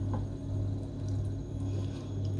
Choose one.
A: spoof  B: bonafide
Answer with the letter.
B